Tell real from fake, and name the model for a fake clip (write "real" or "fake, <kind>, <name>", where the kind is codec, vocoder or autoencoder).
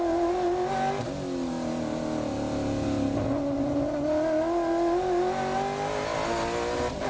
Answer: real